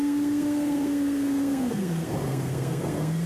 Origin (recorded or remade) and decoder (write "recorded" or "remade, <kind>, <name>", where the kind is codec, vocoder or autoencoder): remade, codec, SNAC